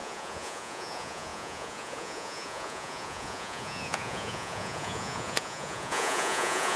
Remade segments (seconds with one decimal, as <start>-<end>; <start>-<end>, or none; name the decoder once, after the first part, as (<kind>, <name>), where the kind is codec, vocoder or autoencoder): 0.0-6.8 (vocoder, Vocos)